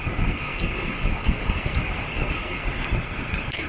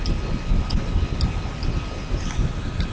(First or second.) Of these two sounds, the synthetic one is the first